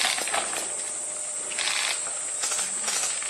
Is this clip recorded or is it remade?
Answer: recorded